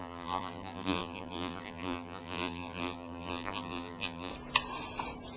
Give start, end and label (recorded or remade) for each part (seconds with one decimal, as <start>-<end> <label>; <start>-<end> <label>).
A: 0.0-4.3 remade; 4.3-5.4 recorded